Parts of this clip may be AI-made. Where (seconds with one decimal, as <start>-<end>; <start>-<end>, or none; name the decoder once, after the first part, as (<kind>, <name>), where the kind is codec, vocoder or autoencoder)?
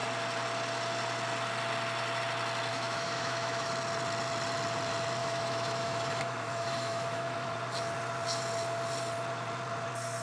2.7-3.7 (autoencoder, DAC-VAE); 5.2-7.5